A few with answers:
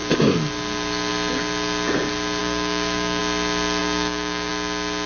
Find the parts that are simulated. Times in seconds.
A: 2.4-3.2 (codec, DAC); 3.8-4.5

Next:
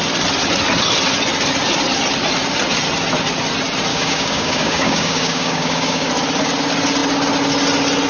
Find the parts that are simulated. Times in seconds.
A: 3.9-6.1 (codec, DAC)

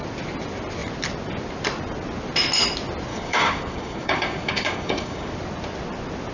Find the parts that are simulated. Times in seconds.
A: 3.1-5.3 (codec, DAC)

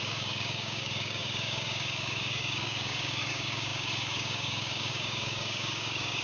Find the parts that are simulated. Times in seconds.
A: 0.0-6.2 (codec, DAC)

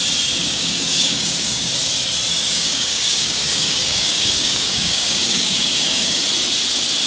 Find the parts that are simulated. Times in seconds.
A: 0.4-1.7 (codec, DAC); 2.3-6.2

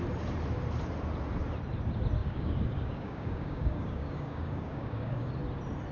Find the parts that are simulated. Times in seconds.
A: 2.2-5.3 (codec, DAC)

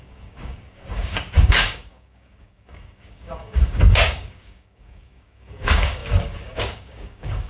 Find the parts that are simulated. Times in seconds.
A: 0.0-7.5 (codec, DAC)